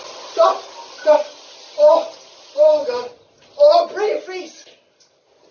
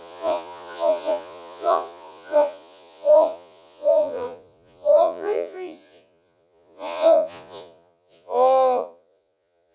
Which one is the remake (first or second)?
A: second